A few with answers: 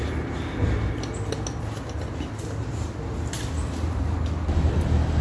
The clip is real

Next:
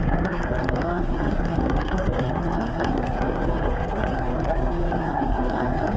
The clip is fake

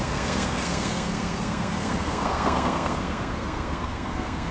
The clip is fake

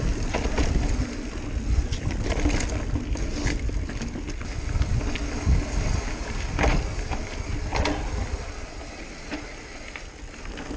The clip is real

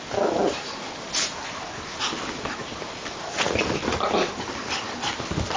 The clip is real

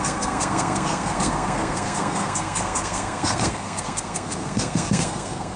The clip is fake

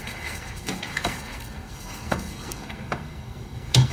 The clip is fake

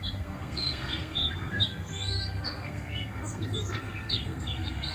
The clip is fake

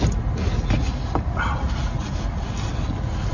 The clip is real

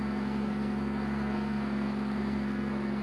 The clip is fake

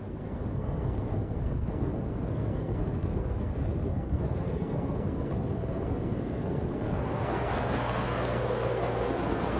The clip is fake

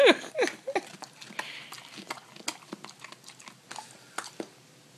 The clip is real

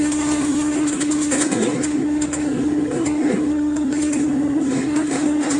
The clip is fake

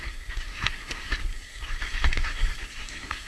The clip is fake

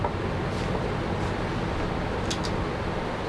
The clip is real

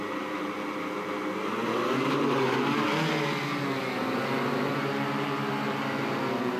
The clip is real